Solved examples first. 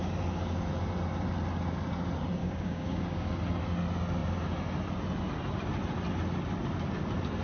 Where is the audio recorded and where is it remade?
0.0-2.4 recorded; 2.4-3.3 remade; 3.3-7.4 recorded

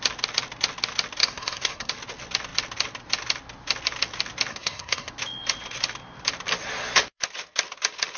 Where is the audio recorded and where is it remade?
0.0-1.2 recorded; 1.2-1.9 remade; 1.9-4.5 recorded; 4.5-5.1 remade; 5.1-8.2 recorded